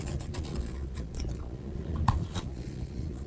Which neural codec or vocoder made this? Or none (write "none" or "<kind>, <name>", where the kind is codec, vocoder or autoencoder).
vocoder, Vocos